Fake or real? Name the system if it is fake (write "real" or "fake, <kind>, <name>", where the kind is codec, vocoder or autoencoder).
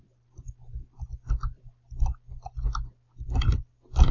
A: real